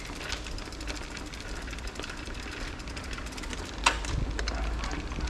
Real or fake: real